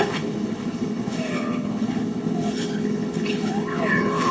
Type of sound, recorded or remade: remade